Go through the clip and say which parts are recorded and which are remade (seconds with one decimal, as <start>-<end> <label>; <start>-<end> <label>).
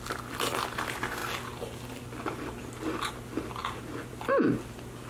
0.0-5.1 recorded